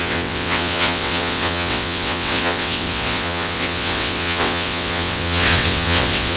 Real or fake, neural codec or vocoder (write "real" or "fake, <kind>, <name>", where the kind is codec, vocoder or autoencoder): fake, vocoder, WaveNeXt